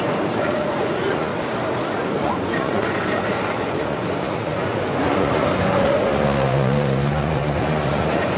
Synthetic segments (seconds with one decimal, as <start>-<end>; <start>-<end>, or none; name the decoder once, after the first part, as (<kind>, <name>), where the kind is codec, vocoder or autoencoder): 0.0-1.3 (vocoder, Vocos); 1.9-8.4

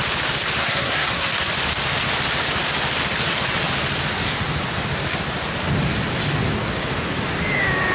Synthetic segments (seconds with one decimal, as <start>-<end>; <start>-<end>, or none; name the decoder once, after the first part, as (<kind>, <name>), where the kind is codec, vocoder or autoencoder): 0.6-1.5 (codec, SNAC)

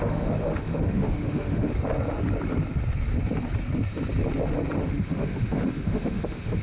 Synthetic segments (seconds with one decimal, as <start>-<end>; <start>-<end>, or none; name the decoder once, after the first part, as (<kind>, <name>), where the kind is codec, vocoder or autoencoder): 0.0-1.7 (autoencoder, DAC-VAE); 4.8-6.6

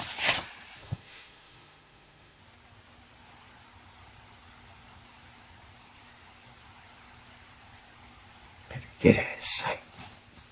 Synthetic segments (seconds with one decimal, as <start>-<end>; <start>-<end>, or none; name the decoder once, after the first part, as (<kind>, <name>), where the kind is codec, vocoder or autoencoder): 0.8-2.4 (autoencoder, DAC-VAE)

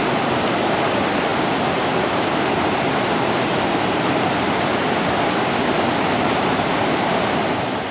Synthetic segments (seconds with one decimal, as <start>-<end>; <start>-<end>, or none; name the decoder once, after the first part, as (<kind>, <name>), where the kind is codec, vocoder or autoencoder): none

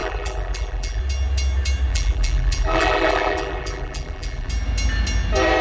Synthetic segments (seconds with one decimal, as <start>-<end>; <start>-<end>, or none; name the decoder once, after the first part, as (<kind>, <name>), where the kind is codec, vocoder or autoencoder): 0.0-1.0 (vocoder, BigVGAN v2); 1.9-4.5

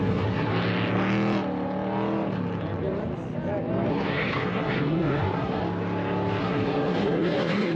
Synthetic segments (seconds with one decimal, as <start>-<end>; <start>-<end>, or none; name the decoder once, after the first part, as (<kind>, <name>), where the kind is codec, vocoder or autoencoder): 0.0-0.5 (codec, SNAC); 3.9-5.6; 6.4-7.7